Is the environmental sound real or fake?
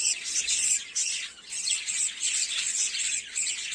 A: fake